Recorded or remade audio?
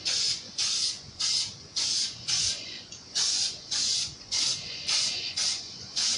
remade